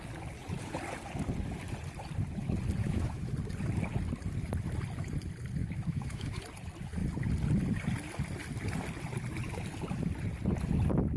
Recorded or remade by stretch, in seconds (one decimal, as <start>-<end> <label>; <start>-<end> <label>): 0.0-2.8 recorded; 2.8-3.3 remade; 3.3-5.6 recorded; 5.6-6.4 remade; 6.4-11.2 recorded